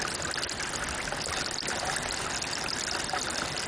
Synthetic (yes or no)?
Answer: no